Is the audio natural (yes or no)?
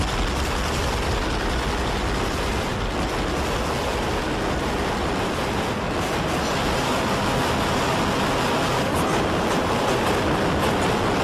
yes